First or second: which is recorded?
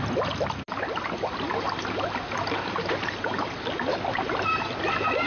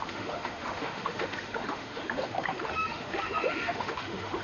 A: first